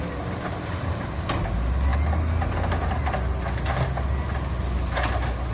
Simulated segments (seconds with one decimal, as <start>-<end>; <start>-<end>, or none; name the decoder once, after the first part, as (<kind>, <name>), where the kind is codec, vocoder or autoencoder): none